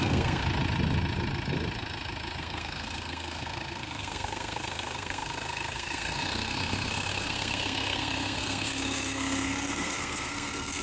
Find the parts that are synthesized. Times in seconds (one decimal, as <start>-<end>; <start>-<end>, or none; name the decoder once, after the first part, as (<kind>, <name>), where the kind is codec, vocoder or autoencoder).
0.0-0.4 (codec, SNAC); 2.4-10.8